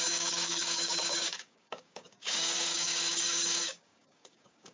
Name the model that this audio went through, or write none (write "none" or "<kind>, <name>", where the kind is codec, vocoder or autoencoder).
codec, DAC